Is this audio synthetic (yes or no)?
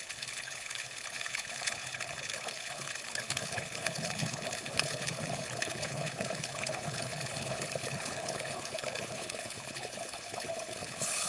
yes